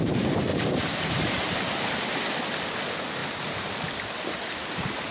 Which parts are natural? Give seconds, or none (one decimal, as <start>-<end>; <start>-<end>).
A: 0.0-0.5; 2.1-3.2; 3.8-5.1

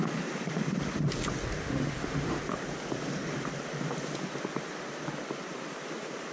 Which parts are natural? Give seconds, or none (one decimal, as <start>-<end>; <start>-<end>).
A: 0.0-1.6; 2.4-6.3

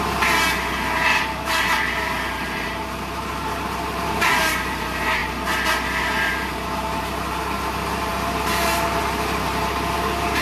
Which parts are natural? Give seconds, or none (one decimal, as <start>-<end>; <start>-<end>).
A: 5.2-6.0

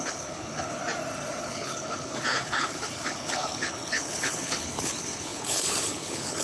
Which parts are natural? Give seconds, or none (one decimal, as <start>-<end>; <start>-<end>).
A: 0.8-1.4

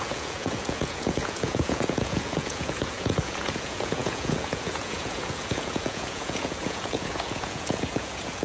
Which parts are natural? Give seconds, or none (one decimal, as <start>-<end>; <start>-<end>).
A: none

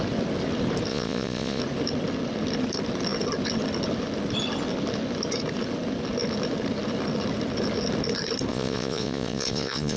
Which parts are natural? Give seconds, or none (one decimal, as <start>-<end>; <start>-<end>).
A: 0.0-0.9; 1.6-8.5

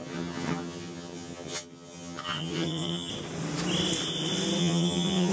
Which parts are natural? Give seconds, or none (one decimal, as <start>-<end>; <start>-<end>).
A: 3.1-4.6

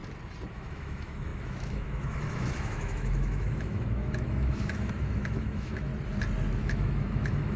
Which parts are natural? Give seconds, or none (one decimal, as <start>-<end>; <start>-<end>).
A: 0.0-0.5; 5.9-6.5